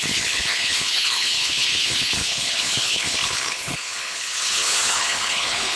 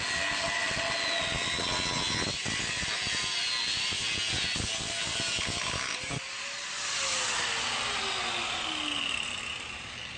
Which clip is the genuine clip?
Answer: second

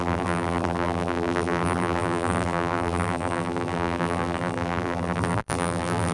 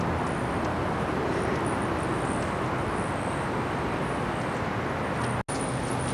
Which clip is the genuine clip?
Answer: second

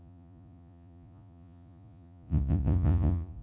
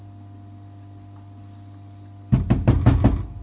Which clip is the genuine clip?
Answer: second